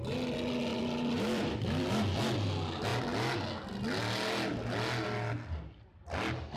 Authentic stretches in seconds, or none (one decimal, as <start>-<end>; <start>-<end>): 0.0-0.7; 1.9-6.6